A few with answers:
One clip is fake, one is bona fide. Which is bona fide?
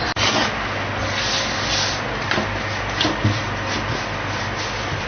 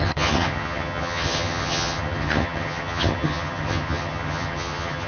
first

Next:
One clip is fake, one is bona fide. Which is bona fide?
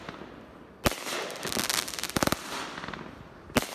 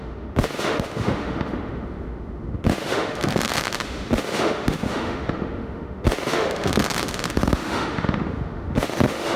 first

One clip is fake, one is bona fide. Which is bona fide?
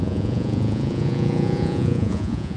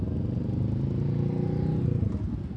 second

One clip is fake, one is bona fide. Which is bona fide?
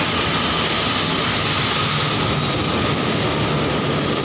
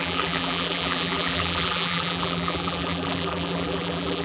first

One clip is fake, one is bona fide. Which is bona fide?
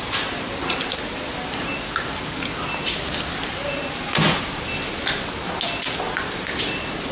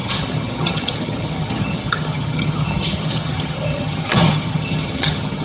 first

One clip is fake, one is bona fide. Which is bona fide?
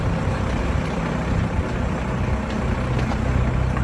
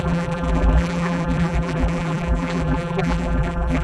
first